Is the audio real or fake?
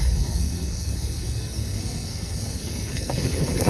fake